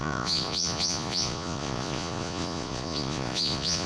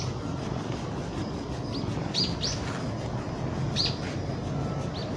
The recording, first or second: second